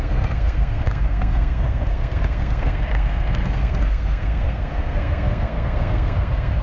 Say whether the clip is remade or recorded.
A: remade